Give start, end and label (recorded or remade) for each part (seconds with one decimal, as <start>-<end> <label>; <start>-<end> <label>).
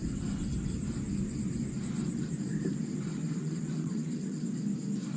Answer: 0.0-3.4 recorded; 3.4-4.4 remade; 4.4-5.2 recorded